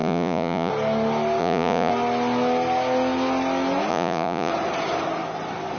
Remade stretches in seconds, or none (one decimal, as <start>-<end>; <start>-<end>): 0.0-0.7; 1.4-1.9; 3.9-4.5